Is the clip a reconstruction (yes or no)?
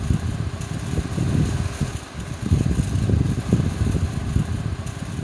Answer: no